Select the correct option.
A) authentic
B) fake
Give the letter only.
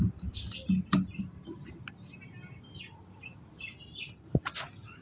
A